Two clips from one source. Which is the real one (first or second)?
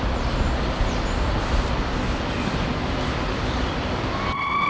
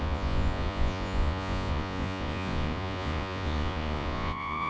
first